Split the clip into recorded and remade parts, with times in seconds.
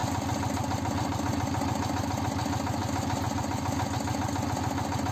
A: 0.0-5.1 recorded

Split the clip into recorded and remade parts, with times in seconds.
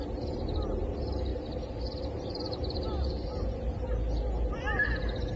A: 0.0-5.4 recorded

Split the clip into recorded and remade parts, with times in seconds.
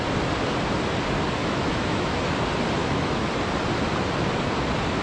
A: 0.0-1.4 recorded; 1.4-2.2 remade; 2.2-2.8 recorded; 2.8-3.3 remade; 3.3-5.0 recorded